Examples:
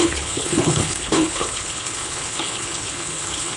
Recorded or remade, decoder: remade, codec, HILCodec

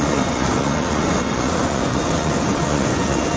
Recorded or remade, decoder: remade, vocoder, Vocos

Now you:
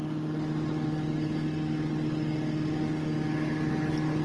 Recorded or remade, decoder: recorded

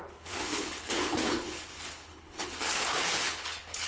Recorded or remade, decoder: remade, codec, HILCodec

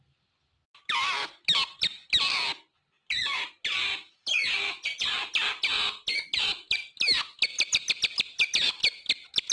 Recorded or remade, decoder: recorded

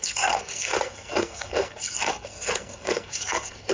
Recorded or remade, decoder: remade, codec, SNAC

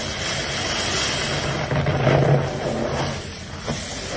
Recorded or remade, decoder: recorded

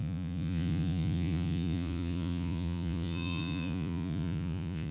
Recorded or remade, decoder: remade, vocoder, Vocos